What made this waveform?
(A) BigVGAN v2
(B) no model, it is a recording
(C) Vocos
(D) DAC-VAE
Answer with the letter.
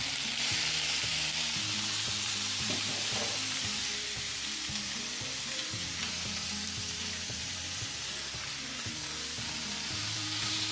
A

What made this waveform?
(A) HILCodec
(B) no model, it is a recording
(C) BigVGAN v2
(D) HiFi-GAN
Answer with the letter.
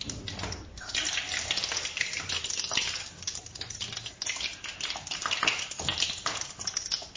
C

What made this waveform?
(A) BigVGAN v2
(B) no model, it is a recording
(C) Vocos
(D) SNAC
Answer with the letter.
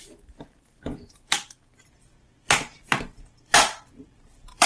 A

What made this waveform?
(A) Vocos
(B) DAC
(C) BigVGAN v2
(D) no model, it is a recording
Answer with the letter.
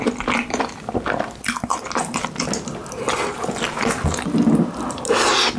D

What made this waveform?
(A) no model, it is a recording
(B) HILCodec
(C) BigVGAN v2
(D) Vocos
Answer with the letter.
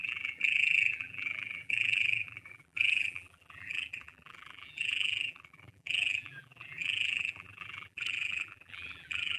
C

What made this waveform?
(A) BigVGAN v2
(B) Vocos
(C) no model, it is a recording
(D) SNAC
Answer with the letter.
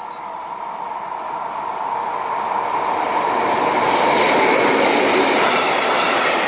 C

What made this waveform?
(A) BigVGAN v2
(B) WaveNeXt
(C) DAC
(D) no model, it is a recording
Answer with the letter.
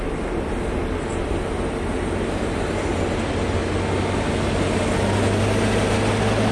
D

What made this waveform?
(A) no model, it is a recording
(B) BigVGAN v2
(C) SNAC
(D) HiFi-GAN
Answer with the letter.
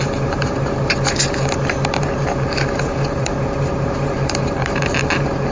B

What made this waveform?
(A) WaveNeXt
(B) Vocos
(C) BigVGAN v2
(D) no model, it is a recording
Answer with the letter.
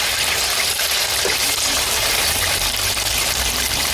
C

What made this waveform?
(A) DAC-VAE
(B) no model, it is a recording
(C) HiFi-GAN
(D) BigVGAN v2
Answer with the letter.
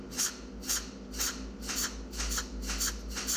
B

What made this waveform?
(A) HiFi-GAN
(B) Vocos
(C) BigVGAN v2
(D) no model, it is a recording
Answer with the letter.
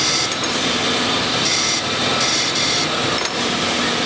D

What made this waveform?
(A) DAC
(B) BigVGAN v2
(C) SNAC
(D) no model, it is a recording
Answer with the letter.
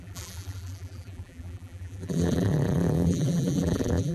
B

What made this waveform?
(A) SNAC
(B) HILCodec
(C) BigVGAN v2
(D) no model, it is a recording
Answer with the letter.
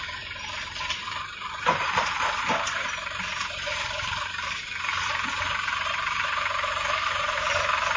C